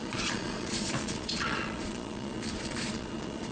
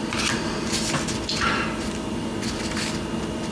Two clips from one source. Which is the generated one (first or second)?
first